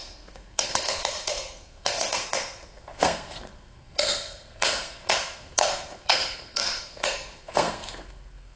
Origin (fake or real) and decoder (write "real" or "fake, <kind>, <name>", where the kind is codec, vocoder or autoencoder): fake, codec, SNAC